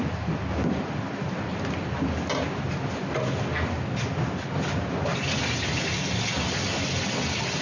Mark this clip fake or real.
real